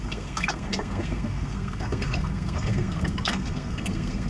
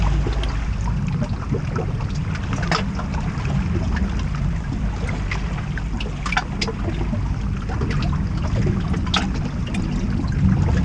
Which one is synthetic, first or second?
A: first